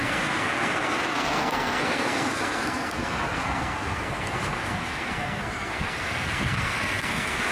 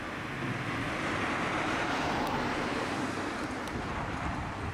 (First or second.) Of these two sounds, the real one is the second